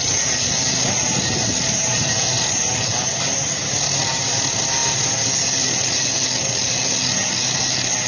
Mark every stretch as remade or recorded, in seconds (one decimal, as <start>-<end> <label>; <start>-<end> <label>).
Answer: 0.0-8.1 recorded

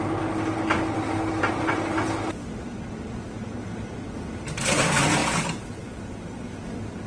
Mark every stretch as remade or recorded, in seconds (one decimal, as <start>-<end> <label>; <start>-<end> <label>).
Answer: 0.0-7.1 recorded

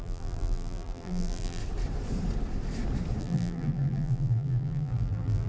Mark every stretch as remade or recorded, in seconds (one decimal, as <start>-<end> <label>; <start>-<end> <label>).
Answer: 0.0-1.6 remade; 1.6-3.2 recorded; 3.2-5.5 remade